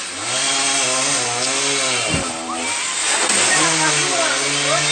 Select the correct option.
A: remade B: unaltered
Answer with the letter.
B